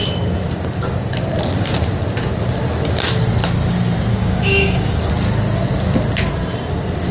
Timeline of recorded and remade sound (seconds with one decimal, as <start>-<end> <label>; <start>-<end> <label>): 0.0-4.1 recorded; 4.1-5.1 remade; 5.1-7.1 recorded